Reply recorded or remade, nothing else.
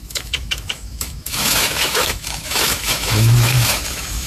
remade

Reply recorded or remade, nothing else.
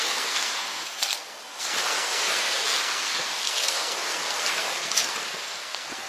remade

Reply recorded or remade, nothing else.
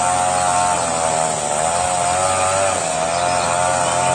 recorded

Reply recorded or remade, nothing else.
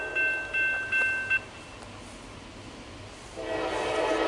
recorded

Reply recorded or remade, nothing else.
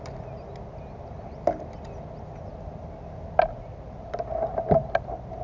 recorded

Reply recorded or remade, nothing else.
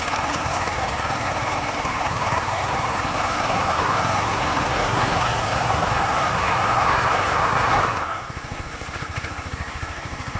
remade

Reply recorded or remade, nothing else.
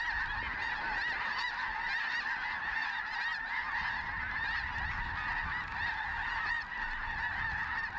recorded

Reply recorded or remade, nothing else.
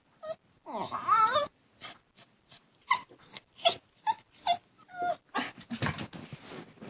recorded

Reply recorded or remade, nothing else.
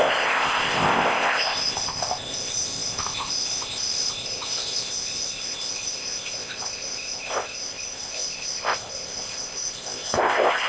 remade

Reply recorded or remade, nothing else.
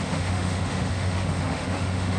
remade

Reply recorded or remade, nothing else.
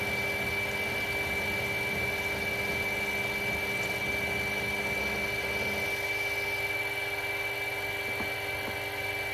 recorded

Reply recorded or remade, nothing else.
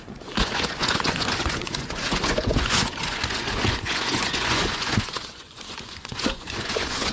remade